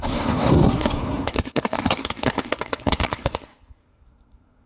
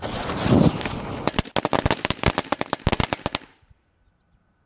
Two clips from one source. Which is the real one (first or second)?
second